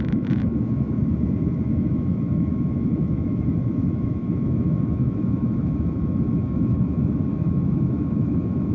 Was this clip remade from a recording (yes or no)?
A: yes